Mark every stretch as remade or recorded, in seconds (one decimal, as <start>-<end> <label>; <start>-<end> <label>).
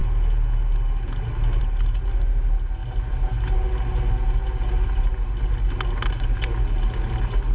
0.0-7.5 recorded